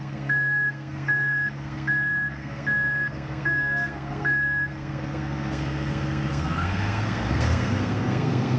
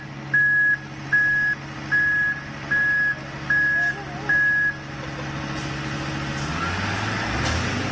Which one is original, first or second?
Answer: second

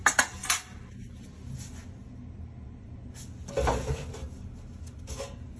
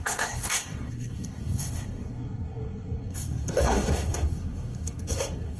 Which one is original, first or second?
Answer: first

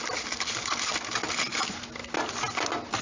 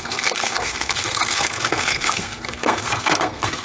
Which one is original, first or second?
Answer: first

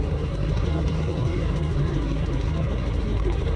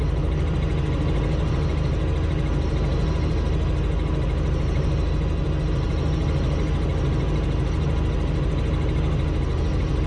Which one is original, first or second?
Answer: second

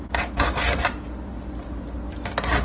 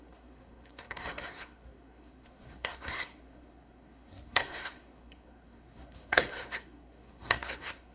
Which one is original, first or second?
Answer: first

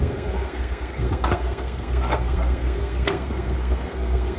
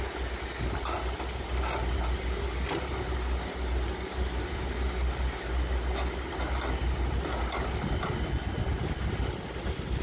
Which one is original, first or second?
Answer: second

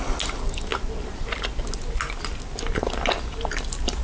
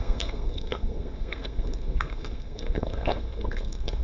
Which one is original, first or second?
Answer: first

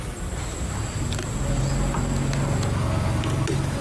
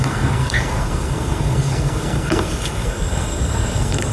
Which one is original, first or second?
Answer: first